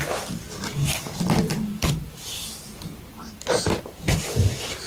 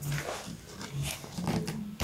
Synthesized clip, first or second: first